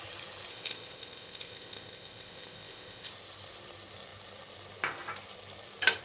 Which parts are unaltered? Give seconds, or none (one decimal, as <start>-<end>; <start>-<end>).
0.0-0.5; 3.1-6.0